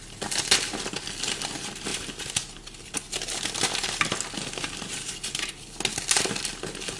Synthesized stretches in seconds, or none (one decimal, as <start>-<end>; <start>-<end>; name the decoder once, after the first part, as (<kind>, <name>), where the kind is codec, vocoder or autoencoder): none